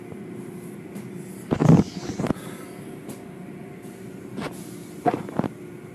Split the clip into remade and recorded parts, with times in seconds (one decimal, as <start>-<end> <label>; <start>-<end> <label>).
0.0-5.9 recorded